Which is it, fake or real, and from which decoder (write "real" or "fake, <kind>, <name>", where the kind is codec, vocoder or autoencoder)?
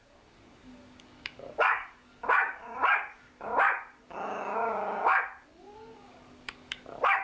fake, codec, DAC